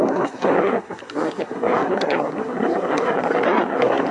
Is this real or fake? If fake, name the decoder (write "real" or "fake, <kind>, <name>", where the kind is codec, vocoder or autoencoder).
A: fake, codec, SNAC